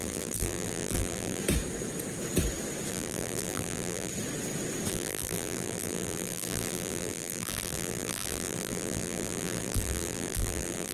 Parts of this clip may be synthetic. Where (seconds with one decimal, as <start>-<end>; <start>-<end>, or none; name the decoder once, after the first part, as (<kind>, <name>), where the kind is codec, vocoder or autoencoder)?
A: 0.0-1.4 (vocoder, BigVGAN v2); 2.9-4.1; 4.9-10.9